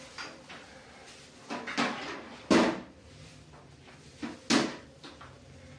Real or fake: real